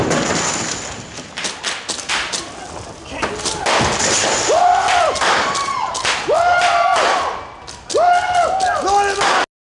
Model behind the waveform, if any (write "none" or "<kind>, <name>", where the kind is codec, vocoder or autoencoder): none